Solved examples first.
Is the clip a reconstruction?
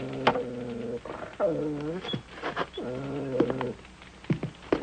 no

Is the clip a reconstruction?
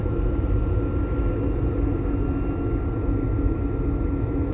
no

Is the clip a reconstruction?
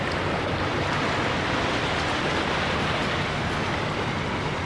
no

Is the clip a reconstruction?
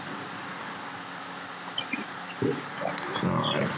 no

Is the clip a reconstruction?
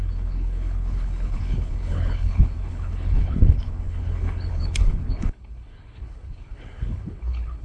yes